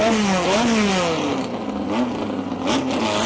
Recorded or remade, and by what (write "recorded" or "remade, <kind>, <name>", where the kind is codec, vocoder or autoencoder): recorded